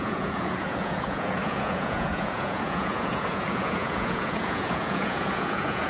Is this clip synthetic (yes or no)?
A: yes